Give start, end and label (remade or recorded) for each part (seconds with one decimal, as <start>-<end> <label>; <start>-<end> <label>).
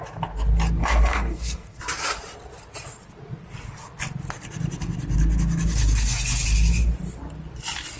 0.0-0.8 recorded; 0.8-1.8 remade; 1.8-8.0 recorded